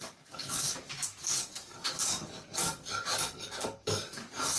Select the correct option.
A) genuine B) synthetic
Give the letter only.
B